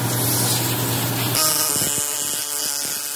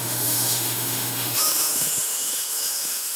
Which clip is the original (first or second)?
first